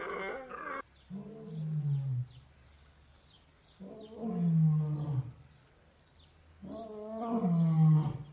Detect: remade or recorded recorded